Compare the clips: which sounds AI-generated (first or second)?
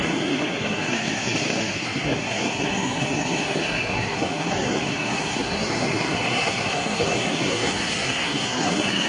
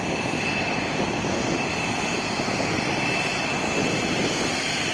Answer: first